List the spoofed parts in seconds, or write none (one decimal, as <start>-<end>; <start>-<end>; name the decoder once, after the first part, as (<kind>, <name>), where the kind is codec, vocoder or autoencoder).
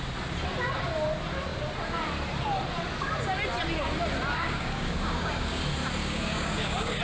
4.3-5.6 (codec, DAC); 6.0-7.0